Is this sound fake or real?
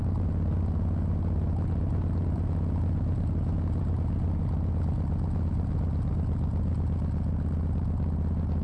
real